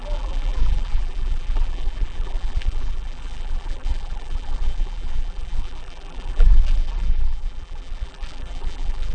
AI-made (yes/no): yes